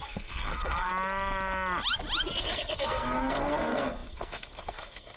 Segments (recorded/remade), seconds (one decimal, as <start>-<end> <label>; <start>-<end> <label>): 0.0-0.9 remade; 0.9-2.4 recorded; 2.4-5.2 remade